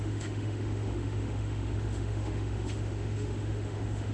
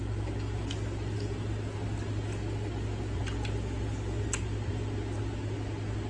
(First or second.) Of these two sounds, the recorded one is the second